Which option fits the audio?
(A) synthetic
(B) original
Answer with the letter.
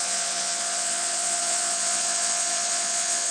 A